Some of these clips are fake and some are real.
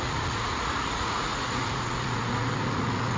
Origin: fake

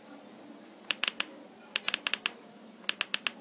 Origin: real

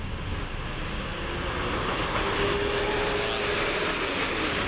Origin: real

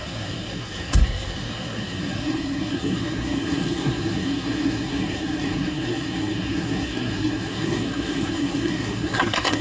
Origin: fake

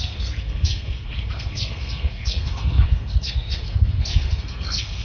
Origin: fake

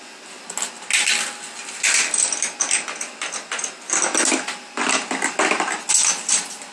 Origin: real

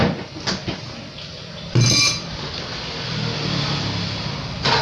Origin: real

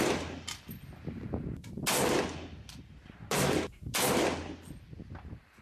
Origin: real